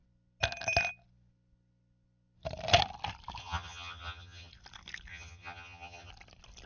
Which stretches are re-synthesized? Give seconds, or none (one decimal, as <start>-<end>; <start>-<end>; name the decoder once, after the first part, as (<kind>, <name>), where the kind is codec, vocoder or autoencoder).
3.4-4.5 (vocoder, HiFi-GAN); 5.1-6.1